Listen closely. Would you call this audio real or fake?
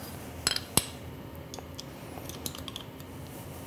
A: real